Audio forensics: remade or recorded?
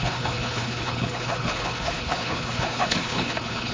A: remade